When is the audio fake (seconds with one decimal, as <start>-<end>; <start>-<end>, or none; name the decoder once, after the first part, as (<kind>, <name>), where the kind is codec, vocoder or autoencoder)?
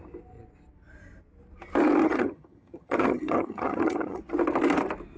2.0-4.2 (vocoder, HiFi-GAN)